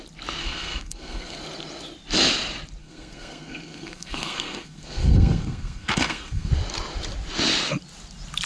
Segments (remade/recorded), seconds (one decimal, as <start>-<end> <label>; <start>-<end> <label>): 0.0-0.4 recorded; 0.4-1.4 remade; 1.4-2.8 recorded; 2.8-6.5 remade; 6.5-8.5 recorded